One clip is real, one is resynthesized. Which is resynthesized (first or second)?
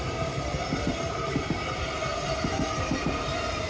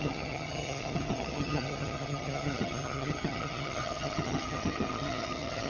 second